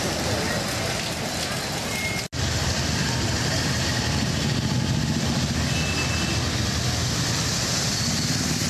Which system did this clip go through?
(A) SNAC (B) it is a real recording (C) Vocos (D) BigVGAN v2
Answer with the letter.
B